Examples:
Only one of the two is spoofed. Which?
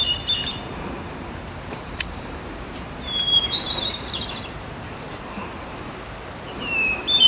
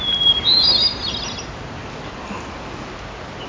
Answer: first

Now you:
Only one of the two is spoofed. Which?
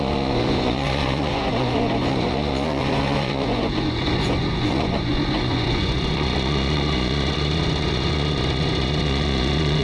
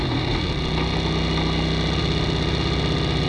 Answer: first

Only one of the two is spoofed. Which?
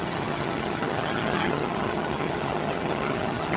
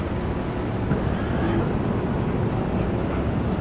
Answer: first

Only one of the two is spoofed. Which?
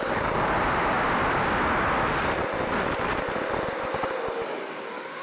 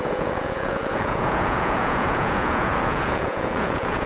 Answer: second